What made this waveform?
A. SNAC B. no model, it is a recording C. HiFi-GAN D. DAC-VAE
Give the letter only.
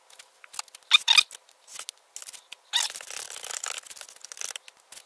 B